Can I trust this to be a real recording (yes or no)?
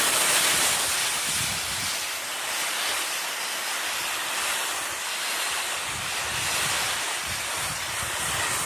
yes